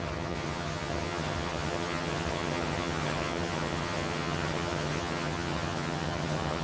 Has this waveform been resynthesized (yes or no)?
yes